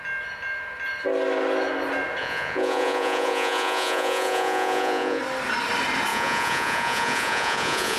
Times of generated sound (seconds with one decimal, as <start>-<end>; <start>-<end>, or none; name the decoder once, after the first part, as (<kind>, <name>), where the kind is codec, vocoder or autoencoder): 2.2-5.2 (vocoder, Vocos); 6.1-8.0